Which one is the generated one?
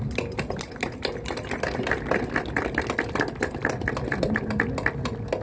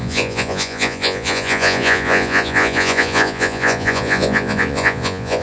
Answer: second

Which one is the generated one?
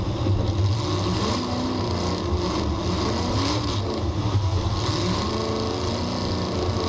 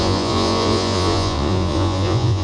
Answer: second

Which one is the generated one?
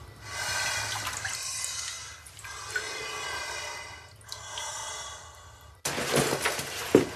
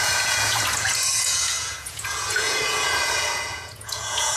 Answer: second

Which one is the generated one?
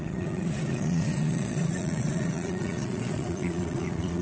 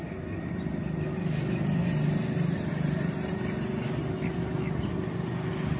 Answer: first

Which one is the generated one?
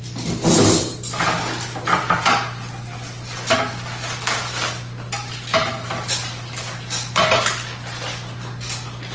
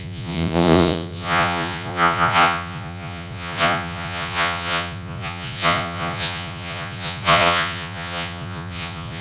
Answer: second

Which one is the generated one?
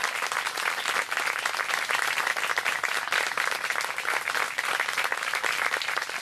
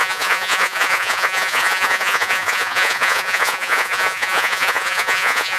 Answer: second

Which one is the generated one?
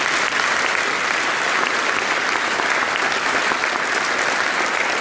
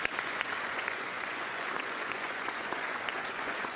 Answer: second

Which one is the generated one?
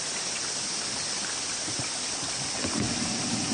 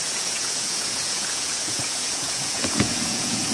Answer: second